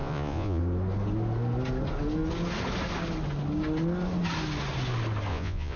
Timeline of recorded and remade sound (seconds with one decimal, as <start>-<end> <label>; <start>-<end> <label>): 0.0-0.6 remade; 0.6-5.3 recorded; 5.3-5.8 remade